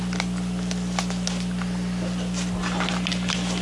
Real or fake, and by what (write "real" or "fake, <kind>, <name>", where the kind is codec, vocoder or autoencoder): real